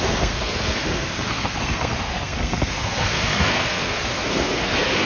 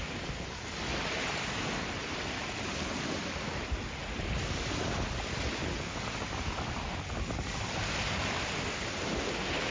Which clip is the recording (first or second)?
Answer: second